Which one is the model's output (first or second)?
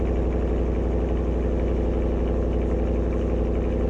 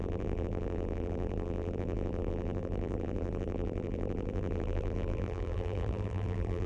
second